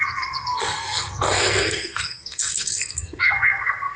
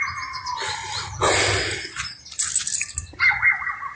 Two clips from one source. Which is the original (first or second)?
second